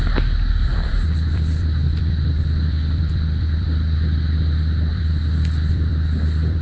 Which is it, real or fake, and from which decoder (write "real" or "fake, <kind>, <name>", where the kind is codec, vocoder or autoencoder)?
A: fake, vocoder, BigVGAN v2